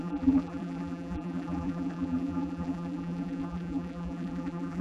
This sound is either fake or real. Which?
fake